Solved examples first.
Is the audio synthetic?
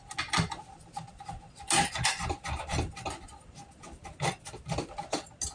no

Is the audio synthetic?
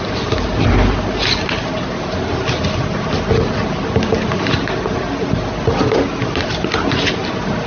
no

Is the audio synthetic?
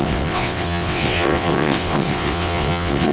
yes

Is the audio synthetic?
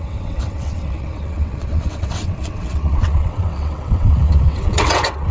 yes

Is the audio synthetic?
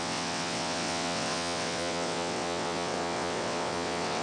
yes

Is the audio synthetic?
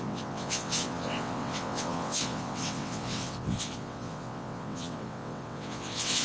yes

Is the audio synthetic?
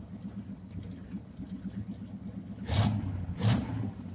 no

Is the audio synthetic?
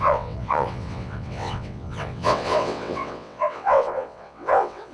yes